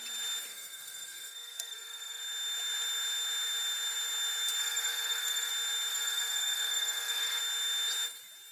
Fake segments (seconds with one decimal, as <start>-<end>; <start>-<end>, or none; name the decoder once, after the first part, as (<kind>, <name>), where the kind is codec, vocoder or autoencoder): 0.5-2.2 (codec, SNAC); 4.6-5.5; 5.9-7.4